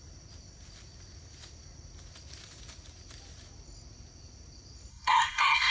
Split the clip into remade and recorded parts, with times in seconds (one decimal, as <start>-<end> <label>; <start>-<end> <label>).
0.0-4.9 recorded; 4.9-5.7 remade